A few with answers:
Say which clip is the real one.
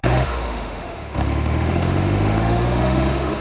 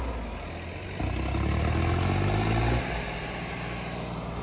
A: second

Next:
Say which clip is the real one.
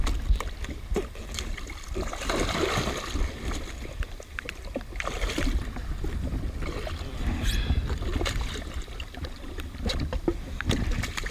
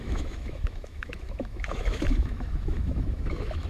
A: first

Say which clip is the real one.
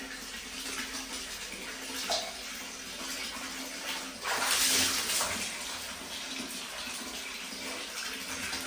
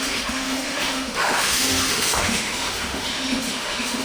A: first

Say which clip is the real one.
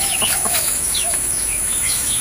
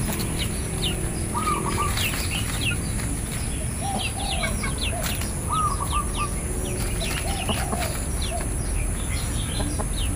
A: second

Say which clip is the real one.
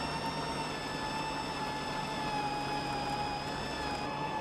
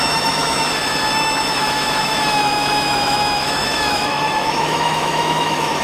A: first